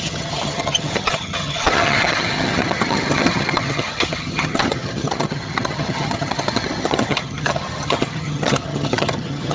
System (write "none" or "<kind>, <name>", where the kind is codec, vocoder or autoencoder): vocoder, HiFi-GAN